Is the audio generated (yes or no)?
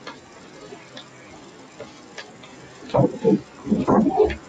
no